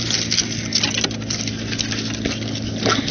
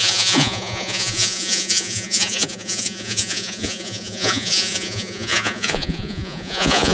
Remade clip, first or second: second